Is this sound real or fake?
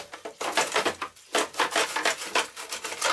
real